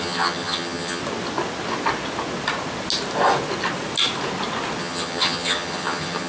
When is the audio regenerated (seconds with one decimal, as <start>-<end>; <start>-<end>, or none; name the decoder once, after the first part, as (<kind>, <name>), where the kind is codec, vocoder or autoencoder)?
0.0-1.0 (vocoder, HiFi-GAN); 4.8-6.3